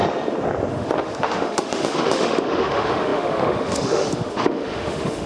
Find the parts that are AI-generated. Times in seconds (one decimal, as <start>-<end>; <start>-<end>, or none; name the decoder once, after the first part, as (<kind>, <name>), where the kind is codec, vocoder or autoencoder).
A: 0.7-5.3 (autoencoder, DAC-VAE)